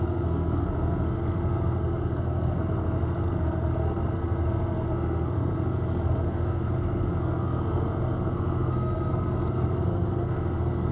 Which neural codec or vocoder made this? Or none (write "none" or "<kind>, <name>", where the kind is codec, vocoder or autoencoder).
codec, SNAC